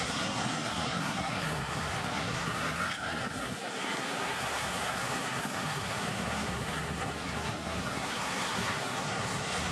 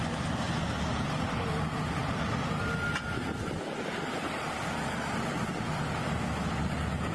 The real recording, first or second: second